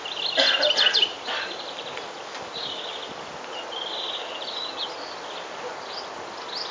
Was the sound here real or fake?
real